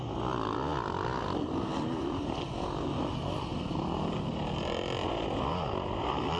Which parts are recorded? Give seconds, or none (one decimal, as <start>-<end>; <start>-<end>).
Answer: 0.0-6.4